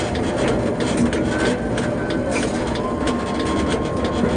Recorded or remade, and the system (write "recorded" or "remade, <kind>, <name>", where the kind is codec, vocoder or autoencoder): recorded